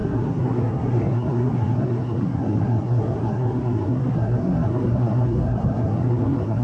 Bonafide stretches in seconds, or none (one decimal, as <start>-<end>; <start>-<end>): none